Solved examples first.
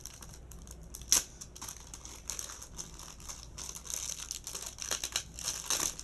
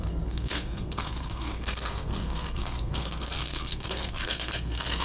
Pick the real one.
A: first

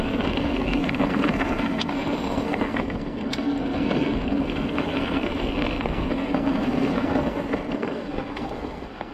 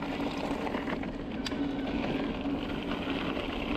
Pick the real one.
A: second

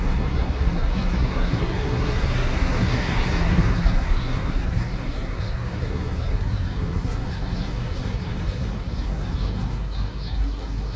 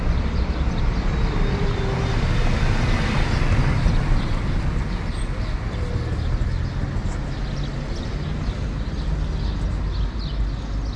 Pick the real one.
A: second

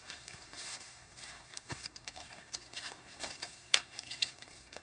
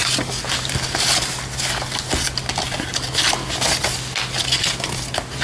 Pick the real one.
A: second